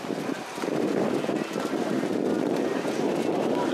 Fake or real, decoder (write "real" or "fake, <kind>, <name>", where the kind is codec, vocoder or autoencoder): real